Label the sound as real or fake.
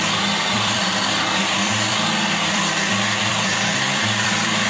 fake